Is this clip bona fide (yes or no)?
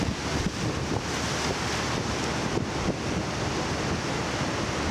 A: yes